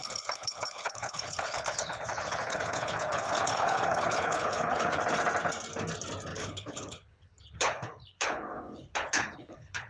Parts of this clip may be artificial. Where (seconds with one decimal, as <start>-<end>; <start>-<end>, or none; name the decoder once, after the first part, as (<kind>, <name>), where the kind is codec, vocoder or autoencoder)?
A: 0.0-5.0 (codec, HILCodec); 6.3-9.9